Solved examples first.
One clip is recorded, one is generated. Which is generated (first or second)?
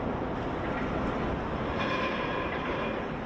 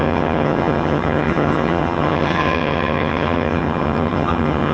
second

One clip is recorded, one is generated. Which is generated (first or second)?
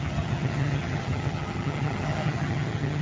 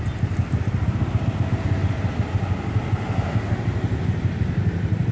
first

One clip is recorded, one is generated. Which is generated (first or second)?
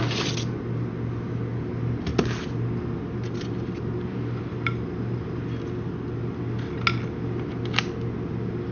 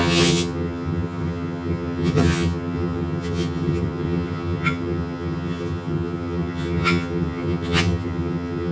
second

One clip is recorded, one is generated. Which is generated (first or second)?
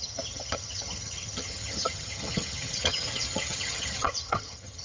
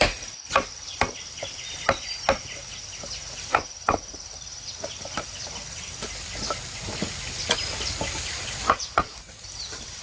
first